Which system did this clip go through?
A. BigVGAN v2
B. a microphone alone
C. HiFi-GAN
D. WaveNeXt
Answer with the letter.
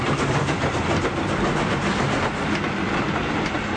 B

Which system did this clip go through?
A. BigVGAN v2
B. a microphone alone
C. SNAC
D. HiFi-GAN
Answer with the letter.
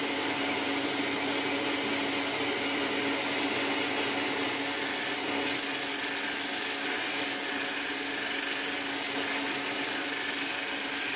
B